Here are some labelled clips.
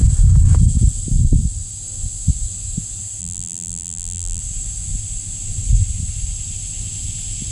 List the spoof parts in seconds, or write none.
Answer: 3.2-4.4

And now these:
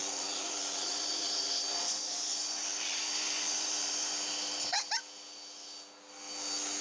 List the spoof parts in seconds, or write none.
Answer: 0.0-4.1

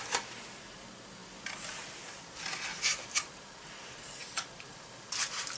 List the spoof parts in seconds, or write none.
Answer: none

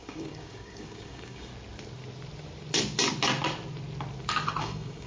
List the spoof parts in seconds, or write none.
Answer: 0.0-1.5; 4.6-5.1